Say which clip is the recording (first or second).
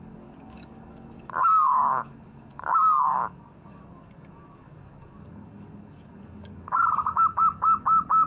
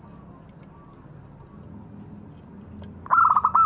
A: second